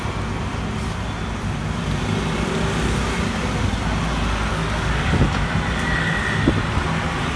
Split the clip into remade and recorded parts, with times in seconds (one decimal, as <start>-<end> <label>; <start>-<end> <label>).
0.0-4.5 recorded; 4.5-5.2 remade; 5.2-7.4 recorded